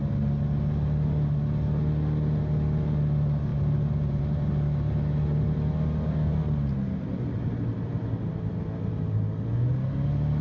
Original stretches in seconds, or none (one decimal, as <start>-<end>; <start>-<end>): 0.0-3.5; 4.2-10.4